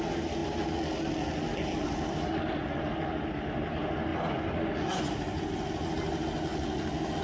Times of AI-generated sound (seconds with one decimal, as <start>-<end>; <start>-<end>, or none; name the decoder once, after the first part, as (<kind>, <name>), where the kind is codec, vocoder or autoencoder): none